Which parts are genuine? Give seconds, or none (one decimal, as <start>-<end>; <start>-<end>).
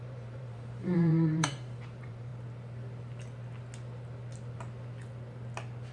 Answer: 2.3-5.9